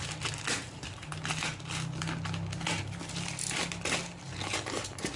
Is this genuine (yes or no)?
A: yes